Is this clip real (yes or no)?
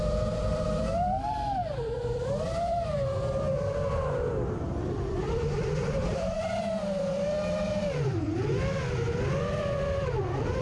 no